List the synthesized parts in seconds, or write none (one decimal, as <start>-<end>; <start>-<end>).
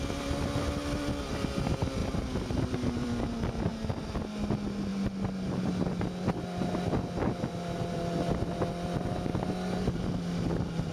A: 2.0-3.2